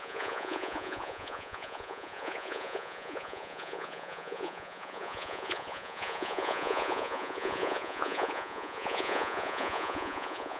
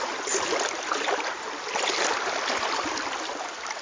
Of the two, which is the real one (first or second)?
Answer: second